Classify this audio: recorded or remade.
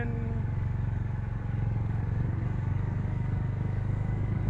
remade